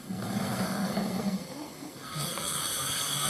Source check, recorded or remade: remade